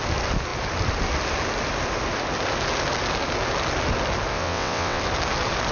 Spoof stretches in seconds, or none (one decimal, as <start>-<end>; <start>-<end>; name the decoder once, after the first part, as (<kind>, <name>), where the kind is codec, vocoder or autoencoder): 4.3-5.0 (vocoder, WaveNeXt)